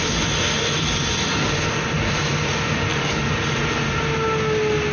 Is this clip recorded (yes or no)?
yes